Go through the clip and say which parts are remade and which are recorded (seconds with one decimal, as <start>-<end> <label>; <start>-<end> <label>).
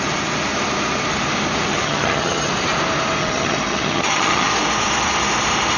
0.0-1.7 recorded; 1.7-2.5 remade; 2.5-3.2 recorded; 3.2-4.5 remade; 4.5-5.8 recorded